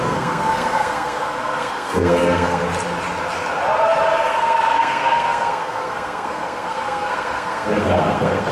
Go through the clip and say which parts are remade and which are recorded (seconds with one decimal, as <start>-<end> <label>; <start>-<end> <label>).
0.0-2.6 remade; 2.6-4.1 recorded; 4.1-8.5 remade